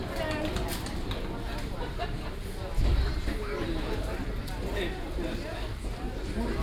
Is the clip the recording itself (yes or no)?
yes